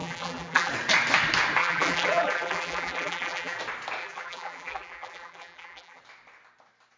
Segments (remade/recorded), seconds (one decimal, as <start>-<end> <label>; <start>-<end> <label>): 0.0-0.7 remade; 0.7-1.6 recorded; 1.6-3.6 remade; 3.6-4.0 recorded; 4.0-6.0 remade; 6.0-7.0 recorded